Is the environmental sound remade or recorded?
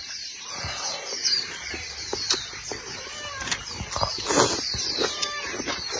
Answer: remade